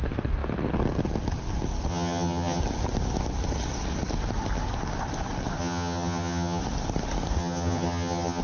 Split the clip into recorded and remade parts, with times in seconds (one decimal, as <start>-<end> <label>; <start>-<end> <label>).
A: 0.0-1.9 recorded; 1.9-2.6 remade; 2.6-5.6 recorded; 5.6-6.6 remade; 6.6-7.4 recorded; 7.4-8.4 remade